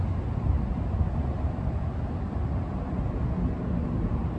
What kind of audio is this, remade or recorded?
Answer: recorded